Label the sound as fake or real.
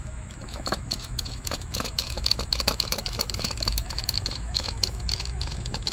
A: fake